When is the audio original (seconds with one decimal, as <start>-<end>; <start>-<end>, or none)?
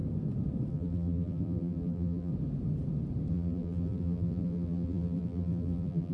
0.0-0.7; 2.3-3.3